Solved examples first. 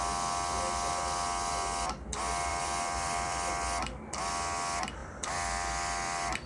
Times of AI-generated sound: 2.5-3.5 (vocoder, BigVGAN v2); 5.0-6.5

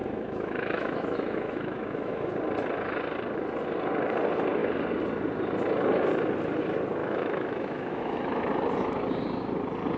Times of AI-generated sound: 0.0-2.3 (autoencoder, DAC-VAE); 7.0-8.4

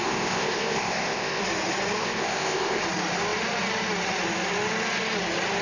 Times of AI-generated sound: 0.0-1.4 (codec, ZipCodec); 2.0-2.8

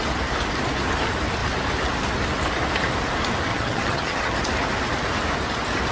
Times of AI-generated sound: 3.5-4.4 (vocoder, HiFi-GAN)

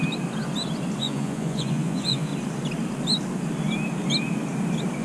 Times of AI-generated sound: 1.0-2.3 (vocoder, Vocos)